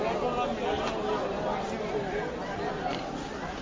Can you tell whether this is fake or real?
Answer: real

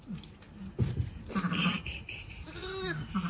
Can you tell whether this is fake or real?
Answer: real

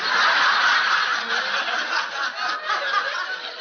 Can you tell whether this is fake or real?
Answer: real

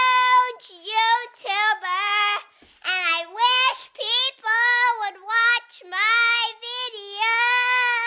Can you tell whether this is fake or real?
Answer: real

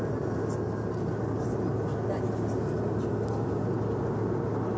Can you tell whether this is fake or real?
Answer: real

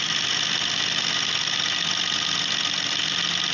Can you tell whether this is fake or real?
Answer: real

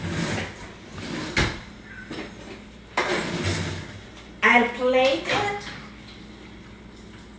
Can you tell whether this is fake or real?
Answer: real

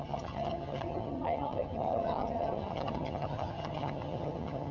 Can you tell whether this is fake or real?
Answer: fake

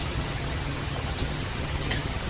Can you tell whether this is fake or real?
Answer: fake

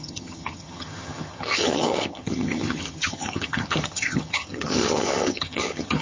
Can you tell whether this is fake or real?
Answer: fake